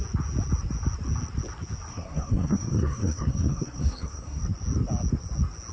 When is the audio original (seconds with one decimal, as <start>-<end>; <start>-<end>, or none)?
0.0-1.9; 4.4-5.7